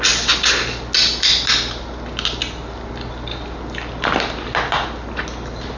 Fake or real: real